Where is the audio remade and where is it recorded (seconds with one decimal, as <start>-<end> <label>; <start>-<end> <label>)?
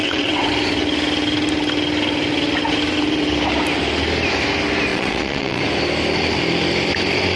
0.0-0.5 remade; 0.5-4.9 recorded; 4.9-5.6 remade; 5.6-7.4 recorded